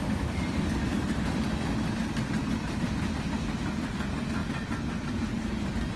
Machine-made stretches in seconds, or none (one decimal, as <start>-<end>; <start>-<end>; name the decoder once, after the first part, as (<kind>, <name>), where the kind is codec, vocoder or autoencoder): 4.4-5.1 (vocoder, BigVGAN v2)